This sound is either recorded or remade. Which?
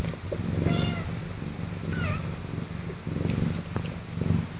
recorded